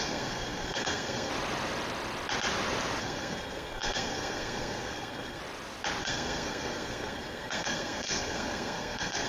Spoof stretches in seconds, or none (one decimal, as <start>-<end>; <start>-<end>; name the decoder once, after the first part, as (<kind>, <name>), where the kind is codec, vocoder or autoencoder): 0.0-1.3 (codec, SNAC); 3.0-5.4; 6.0-9.3